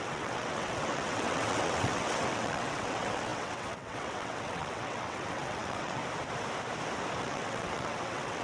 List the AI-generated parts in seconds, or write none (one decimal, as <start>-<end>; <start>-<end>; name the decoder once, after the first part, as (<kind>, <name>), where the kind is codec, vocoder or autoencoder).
0.0-6.0 (vocoder, WaveNeXt); 7.2-8.4